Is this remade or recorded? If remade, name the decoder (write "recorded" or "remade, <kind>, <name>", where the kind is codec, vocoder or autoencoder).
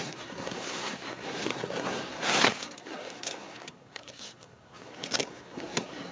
remade, codec, SNAC